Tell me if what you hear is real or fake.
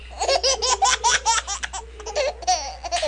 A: real